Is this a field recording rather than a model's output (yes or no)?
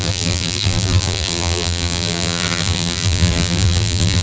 no